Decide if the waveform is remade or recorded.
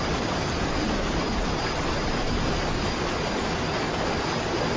recorded